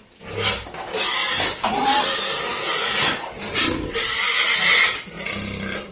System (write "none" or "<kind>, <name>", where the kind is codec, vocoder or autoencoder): none